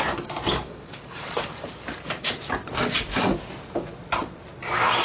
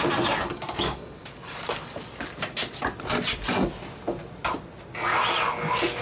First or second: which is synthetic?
first